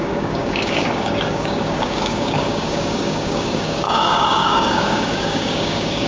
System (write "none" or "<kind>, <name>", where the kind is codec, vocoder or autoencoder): codec, DAC